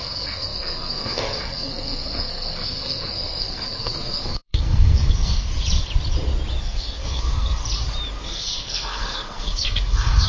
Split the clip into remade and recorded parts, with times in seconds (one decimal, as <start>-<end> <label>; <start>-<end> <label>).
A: 0.0-5.5 remade; 5.5-6.6 recorded; 6.6-7.6 remade; 7.6-8.2 recorded; 8.2-10.3 remade